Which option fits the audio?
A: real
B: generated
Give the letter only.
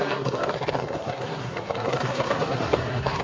B